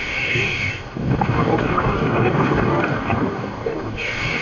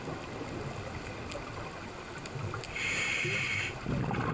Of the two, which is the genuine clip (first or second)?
second